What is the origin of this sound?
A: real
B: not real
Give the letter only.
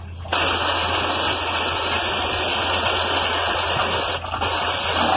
A